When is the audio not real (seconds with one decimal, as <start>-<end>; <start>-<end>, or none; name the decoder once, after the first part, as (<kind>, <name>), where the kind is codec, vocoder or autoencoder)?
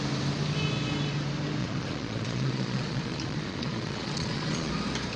1.6-4.7 (vocoder, Vocos)